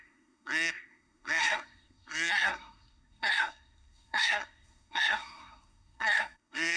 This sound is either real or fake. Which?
fake